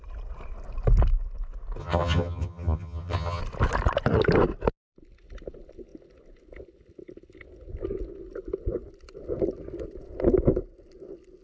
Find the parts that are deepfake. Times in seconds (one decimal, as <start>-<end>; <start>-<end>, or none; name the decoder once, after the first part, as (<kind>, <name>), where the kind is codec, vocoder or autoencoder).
1.8-3.4 (vocoder, HiFi-GAN)